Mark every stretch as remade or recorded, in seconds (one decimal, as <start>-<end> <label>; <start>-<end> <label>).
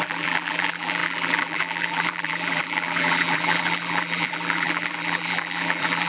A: 0.0-6.1 remade